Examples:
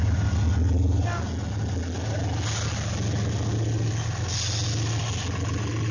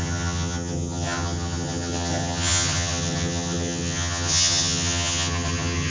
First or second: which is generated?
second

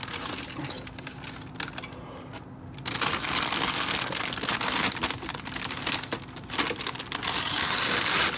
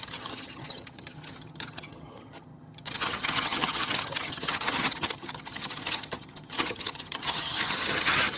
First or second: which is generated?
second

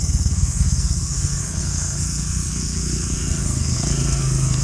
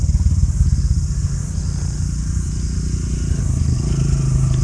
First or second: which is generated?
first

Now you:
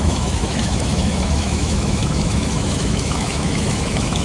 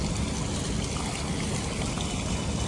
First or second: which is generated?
first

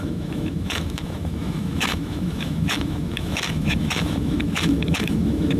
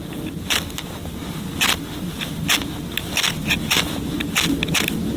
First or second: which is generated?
first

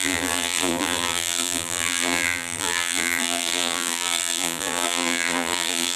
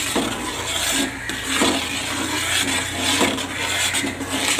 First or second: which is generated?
first